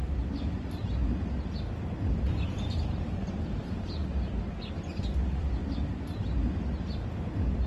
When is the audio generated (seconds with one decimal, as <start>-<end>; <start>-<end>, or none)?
0.0-1.0; 2.1-4.0; 5.0-5.6